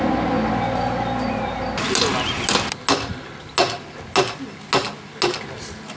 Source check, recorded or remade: recorded